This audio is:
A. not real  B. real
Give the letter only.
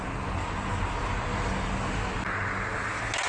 B